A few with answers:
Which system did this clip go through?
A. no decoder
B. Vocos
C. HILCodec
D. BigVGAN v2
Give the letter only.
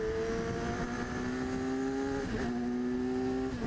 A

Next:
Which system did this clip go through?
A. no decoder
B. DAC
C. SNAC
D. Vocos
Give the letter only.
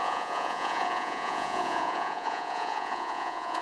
D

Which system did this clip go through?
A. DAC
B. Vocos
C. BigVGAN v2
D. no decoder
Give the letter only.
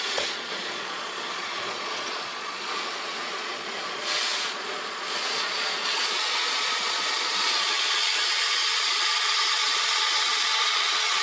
B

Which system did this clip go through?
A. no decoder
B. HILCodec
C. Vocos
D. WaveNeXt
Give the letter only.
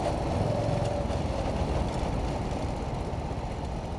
A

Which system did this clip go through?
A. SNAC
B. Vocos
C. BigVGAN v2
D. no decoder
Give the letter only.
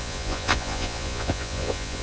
B